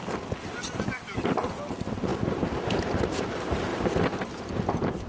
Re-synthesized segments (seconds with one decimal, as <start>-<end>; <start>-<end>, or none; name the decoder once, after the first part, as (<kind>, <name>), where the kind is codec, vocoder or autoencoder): none